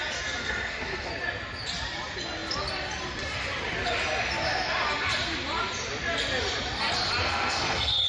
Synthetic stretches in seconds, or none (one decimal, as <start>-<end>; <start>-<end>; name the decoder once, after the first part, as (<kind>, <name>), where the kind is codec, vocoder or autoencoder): 0.4-1.1 (codec, SNAC); 7.2-8.1